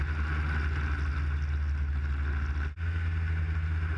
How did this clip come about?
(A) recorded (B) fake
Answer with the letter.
A